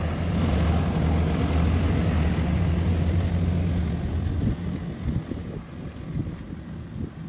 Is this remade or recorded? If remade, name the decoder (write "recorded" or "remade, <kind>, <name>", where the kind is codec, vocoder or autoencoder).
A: recorded